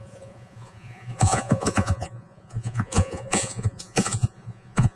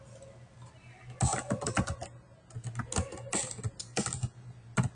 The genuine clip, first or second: second